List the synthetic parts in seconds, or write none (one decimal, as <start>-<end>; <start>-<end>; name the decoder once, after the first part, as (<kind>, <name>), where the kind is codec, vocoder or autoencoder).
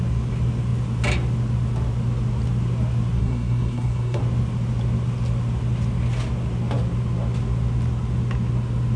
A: 3.2-4.2 (codec, SNAC)